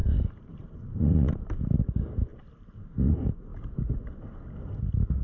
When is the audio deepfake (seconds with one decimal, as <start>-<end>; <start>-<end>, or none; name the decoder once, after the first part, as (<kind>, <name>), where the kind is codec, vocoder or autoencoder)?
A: 0.0-2.3 (vocoder, BigVGAN v2); 3.1-3.5